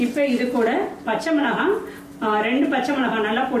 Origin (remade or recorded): recorded